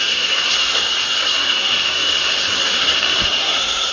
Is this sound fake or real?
fake